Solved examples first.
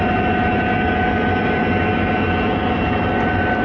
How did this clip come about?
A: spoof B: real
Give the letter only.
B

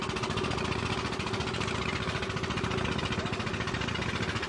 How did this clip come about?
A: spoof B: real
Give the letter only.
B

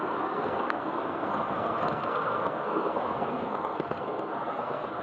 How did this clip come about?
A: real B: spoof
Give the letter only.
B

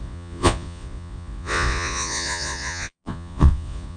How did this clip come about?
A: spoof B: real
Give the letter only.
A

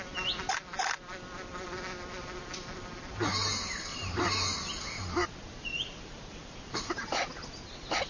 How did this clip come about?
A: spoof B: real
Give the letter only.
B